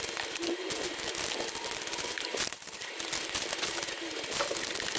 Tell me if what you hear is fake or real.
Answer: real